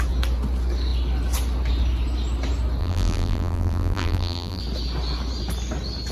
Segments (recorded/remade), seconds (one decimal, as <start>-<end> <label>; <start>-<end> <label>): 0.0-2.8 recorded; 2.8-4.6 remade; 4.6-6.1 recorded